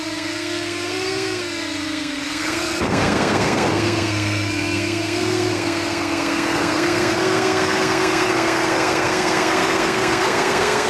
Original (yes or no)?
no